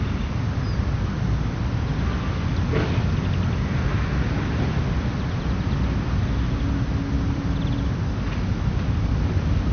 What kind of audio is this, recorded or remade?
recorded